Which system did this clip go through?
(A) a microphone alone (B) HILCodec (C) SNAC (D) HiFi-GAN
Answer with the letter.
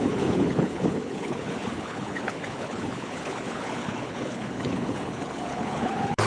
B